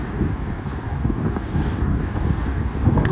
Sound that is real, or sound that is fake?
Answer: fake